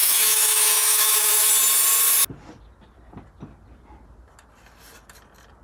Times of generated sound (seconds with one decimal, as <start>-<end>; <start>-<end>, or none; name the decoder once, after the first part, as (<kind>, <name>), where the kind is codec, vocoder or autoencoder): 0.0-1.5 (autoencoder, DAC-VAE)